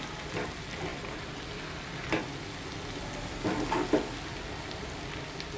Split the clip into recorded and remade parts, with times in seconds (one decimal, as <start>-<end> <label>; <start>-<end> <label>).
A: 0.0-0.9 recorded; 0.9-1.4 remade; 1.4-5.6 recorded